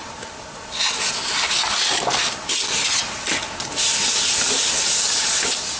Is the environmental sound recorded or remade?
recorded